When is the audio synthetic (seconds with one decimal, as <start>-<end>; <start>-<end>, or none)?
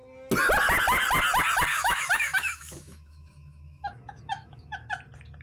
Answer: 1.7-4.9